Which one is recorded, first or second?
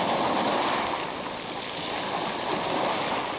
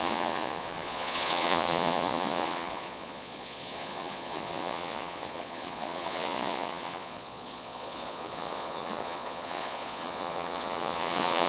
first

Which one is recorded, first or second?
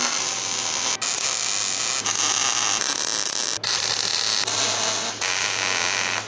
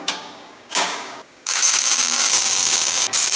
first